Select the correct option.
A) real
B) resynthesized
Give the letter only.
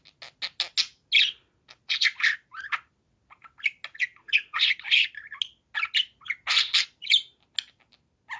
A